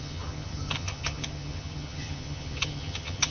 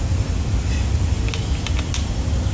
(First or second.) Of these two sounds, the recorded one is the second